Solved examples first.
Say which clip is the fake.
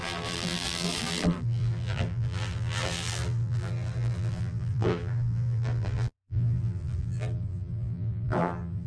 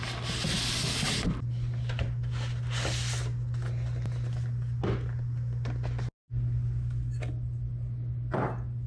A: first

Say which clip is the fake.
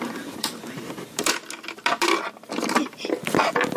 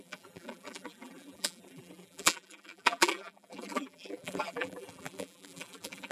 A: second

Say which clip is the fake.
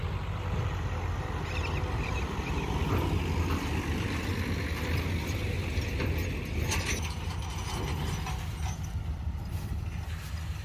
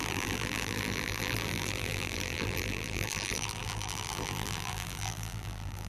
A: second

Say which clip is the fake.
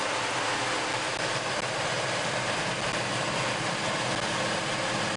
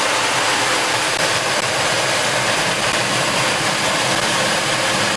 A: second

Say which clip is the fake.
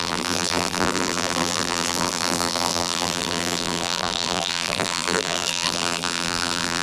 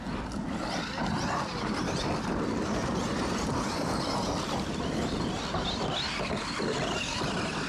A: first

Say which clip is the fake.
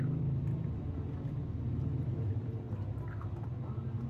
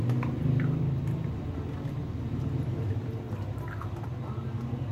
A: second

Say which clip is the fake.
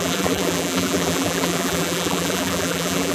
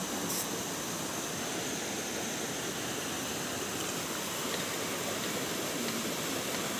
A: first